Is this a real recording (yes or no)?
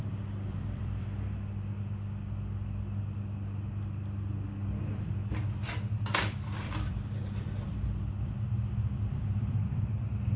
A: no